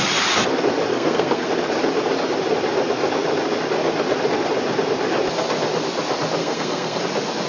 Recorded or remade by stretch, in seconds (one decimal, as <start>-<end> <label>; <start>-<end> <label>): 0.0-0.9 recorded; 0.9-1.5 remade; 1.5-6.4 recorded; 6.4-7.0 remade; 7.0-7.5 recorded